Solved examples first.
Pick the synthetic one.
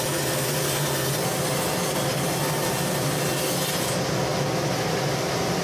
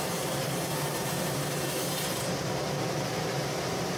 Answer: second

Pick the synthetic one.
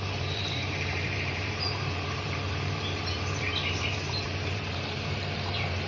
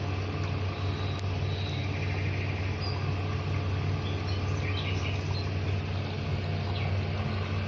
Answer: first